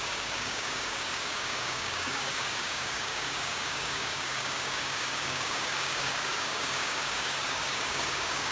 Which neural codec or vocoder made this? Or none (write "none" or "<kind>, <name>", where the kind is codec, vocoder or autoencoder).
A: codec, DAC